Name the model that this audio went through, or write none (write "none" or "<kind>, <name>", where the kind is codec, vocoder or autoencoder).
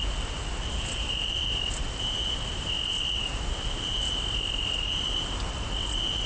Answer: none